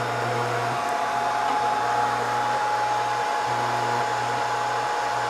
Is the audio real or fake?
real